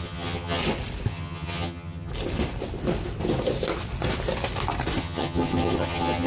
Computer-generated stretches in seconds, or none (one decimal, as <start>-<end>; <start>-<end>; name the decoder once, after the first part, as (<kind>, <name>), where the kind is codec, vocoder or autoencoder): 0.0-0.6 (vocoder, HiFi-GAN); 1.1-2.1; 5.0-6.3